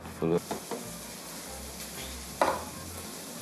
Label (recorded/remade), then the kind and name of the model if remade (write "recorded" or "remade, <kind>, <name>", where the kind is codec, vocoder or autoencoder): recorded